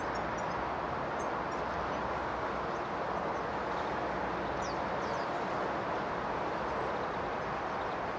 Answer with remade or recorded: recorded